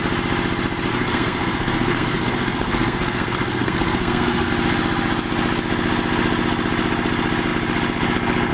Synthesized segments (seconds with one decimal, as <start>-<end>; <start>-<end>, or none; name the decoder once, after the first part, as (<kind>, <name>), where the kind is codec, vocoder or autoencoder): 0.9-4.5 (codec, SNAC)